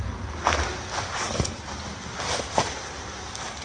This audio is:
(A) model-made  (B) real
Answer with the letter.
B